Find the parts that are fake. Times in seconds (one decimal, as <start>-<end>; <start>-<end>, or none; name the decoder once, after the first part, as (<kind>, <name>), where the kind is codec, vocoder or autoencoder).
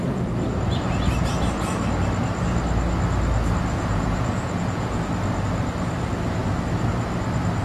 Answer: 3.7-5.1 (vocoder, Vocos)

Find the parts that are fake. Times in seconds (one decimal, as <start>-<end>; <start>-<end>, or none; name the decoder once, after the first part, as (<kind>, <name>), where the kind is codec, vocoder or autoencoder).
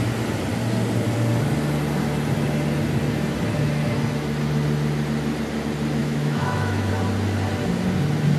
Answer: 6.0-6.9 (autoencoder, DAC-VAE)